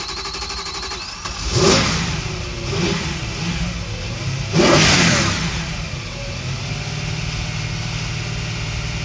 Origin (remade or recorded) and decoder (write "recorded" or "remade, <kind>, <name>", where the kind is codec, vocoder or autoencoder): recorded